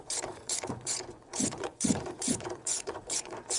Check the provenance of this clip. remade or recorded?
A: remade